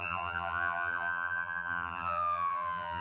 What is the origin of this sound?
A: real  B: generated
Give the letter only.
B